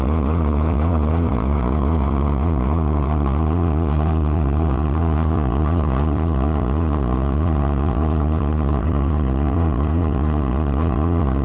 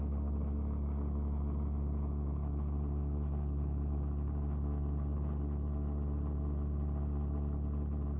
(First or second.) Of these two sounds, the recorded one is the second